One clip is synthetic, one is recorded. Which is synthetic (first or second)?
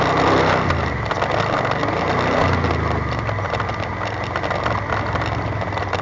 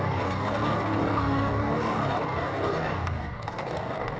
second